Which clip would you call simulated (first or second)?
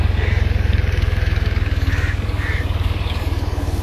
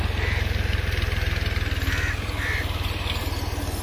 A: first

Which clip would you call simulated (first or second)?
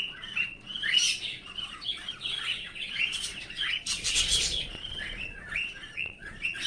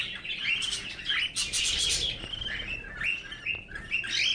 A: first